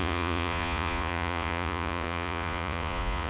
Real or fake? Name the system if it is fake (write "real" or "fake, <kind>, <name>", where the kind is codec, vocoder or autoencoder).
fake, vocoder, Vocos